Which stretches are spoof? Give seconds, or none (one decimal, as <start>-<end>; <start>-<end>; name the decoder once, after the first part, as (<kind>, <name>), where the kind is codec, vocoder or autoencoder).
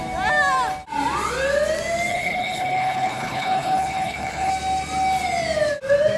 2.1-4.5 (codec, HILCodec)